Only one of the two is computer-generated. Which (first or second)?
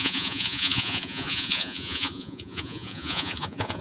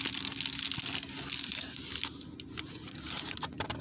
first